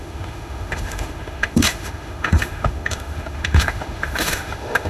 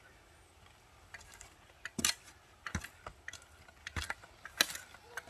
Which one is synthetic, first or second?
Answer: first